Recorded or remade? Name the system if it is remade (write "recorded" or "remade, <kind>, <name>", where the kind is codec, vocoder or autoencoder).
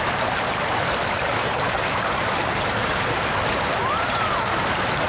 remade, vocoder, BigVGAN v2